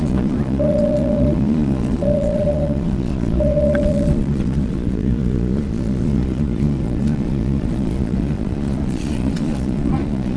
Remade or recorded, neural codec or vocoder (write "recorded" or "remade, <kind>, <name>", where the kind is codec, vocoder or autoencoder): remade, vocoder, Vocos